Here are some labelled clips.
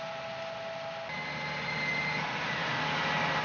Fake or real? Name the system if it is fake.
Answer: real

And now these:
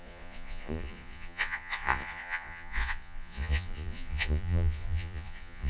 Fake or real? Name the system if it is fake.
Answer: fake, vocoder, Vocos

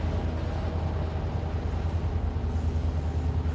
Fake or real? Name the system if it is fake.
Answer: real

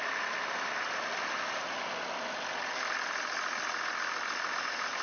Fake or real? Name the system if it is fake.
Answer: real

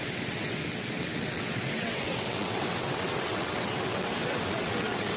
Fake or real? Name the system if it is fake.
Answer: fake, vocoder, WaveNeXt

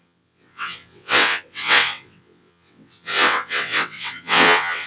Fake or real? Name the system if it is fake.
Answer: fake, vocoder, WaveNeXt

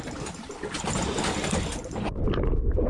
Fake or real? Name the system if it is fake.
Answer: real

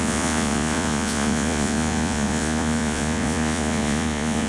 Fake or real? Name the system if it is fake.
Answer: fake, vocoder, Vocos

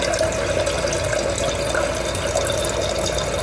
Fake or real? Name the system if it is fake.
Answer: real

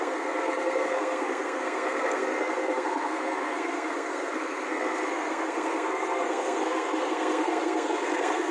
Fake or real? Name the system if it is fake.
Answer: fake, codec, SNAC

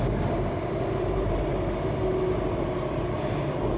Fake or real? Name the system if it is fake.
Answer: real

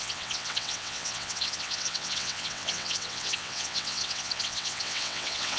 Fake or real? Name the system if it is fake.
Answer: fake, vocoder, WaveNeXt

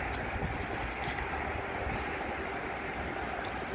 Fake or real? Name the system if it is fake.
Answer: real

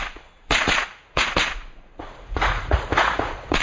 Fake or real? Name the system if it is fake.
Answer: fake, vocoder, Vocos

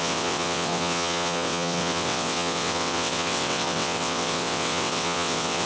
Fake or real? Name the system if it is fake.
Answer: fake, vocoder, WaveNeXt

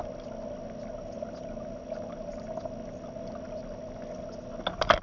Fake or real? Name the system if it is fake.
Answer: real